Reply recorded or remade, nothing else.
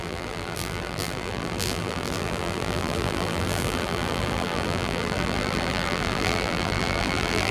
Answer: remade